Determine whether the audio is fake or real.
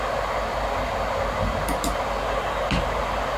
real